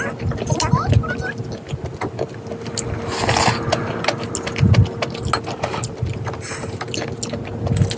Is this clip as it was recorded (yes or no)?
yes